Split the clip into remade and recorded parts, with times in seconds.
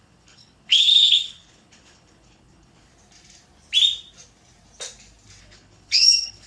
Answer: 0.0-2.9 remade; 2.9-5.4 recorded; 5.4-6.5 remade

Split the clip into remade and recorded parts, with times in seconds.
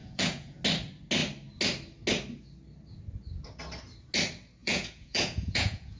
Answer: 0.0-0.6 remade; 0.6-4.6 recorded; 4.6-6.0 remade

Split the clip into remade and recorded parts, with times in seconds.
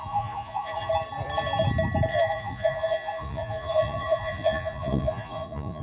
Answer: 0.0-0.9 remade; 0.9-2.1 recorded; 2.1-5.8 remade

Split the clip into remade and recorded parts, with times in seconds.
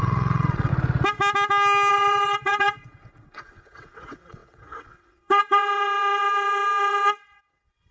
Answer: 0.0-0.7 remade; 0.7-1.9 recorded; 1.9-7.9 remade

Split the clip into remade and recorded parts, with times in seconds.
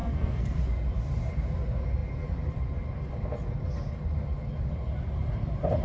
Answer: 0.0-0.6 remade; 0.6-5.8 recorded